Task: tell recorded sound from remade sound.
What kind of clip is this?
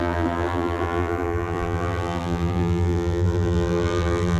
remade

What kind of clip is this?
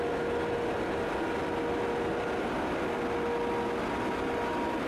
recorded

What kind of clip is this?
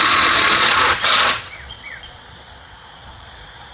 remade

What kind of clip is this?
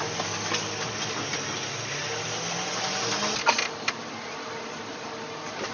recorded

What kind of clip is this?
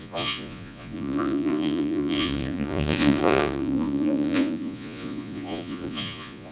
remade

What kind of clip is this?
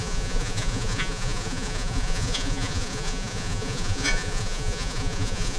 remade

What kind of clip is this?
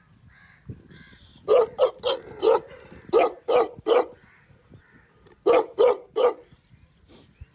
recorded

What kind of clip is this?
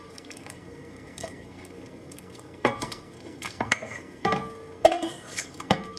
remade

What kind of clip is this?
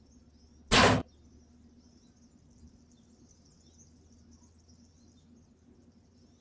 recorded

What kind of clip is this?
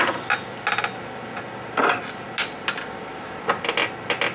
recorded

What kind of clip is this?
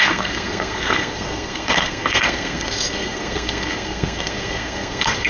remade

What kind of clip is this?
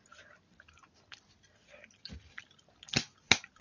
recorded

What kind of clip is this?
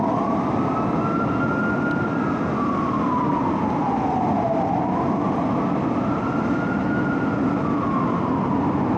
recorded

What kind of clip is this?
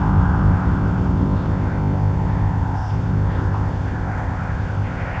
remade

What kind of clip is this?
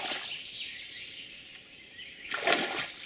recorded